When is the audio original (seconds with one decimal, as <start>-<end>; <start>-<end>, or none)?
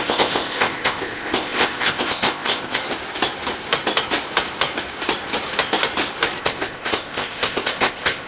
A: 2.8-6.4